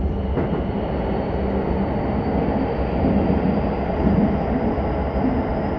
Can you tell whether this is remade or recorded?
recorded